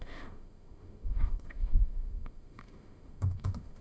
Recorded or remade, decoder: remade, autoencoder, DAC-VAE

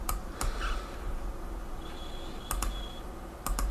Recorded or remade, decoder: recorded